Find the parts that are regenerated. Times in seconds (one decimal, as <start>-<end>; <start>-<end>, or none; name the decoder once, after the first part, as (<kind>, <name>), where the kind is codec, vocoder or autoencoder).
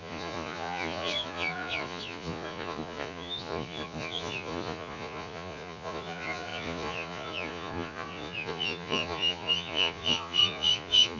0.0-11.2 (vocoder, Vocos)